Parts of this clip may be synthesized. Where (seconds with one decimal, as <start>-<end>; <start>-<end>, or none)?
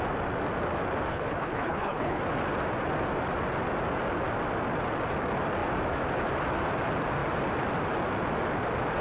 1.1-2.2